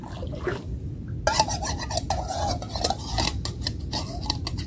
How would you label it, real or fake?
real